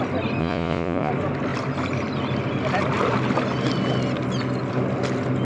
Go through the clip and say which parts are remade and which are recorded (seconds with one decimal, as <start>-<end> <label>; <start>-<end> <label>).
0.0-0.4 recorded; 0.4-1.1 remade; 1.1-5.4 recorded